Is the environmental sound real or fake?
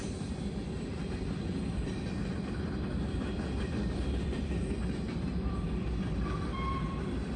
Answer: fake